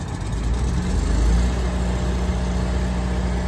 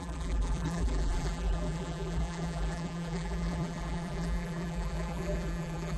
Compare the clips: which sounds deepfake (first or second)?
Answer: second